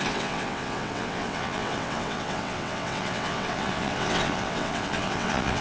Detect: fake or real fake